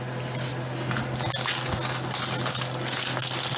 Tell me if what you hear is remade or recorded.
recorded